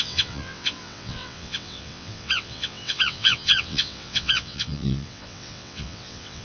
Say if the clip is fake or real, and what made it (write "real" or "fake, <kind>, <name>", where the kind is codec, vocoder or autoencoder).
fake, vocoder, WaveNeXt